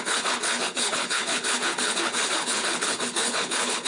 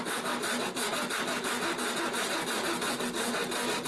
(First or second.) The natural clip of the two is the second